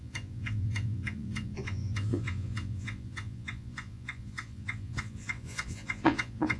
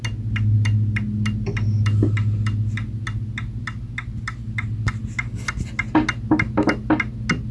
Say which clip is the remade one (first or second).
first